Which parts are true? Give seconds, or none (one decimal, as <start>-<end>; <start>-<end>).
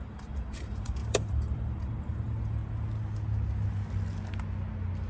2.6-5.1